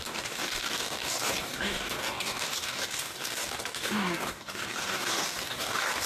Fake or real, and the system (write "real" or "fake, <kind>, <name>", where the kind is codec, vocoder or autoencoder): fake, codec, DAC